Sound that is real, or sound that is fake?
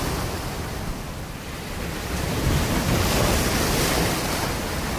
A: real